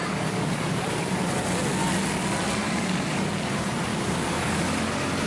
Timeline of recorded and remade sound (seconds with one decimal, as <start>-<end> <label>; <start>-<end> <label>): 0.0-1.1 remade; 1.1-2.6 recorded; 2.6-3.3 remade; 3.3-3.9 recorded; 3.9-4.8 remade; 4.8-5.3 recorded